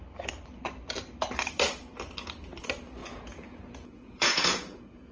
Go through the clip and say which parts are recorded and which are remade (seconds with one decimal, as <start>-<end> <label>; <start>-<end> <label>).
0.0-3.0 recorded; 3.0-5.1 remade